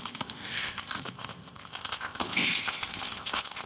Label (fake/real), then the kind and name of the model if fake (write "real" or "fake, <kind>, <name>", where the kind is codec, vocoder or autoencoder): fake, codec, ZipCodec